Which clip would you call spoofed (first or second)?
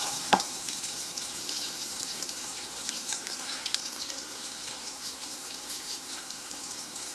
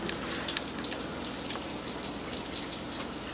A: first